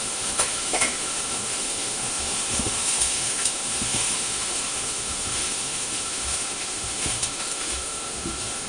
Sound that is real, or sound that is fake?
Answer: fake